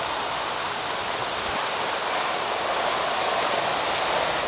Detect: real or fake real